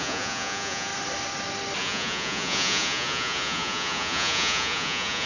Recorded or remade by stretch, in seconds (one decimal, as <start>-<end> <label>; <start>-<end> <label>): 0.0-0.9 remade; 0.9-1.8 recorded; 1.8-5.3 remade